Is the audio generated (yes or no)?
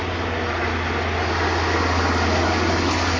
no